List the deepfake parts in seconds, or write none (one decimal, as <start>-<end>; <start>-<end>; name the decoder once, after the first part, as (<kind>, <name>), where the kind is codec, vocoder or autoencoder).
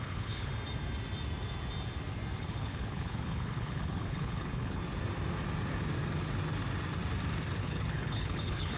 0.0-0.5 (codec, HILCodec); 2.4-4.8; 7.6-8.8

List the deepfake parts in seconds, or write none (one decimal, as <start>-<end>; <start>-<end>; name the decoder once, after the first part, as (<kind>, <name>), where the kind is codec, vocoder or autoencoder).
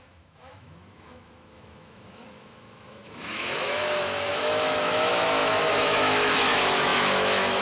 0.0-7.6 (autoencoder, DAC-VAE)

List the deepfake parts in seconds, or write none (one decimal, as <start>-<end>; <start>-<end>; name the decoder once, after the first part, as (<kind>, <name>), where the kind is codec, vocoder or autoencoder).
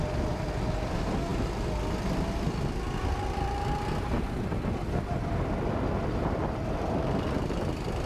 none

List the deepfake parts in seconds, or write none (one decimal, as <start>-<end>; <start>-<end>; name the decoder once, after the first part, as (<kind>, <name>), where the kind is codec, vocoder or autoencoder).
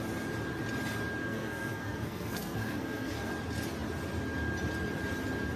1.2-3.3 (codec, SNAC)